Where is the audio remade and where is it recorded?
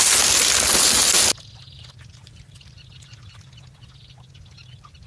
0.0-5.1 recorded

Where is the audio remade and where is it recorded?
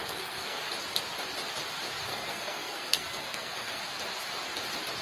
0.0-0.6 remade; 0.6-2.1 recorded; 2.1-3.8 remade; 3.8-5.0 recorded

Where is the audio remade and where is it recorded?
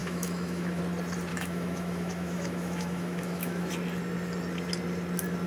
0.0-0.8 remade; 0.8-1.3 recorded; 1.3-3.7 remade; 3.7-5.5 recorded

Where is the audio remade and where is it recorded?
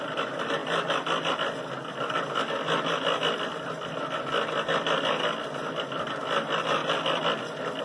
0.0-7.8 recorded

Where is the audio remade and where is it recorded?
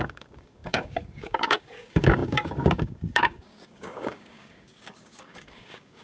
0.0-6.0 remade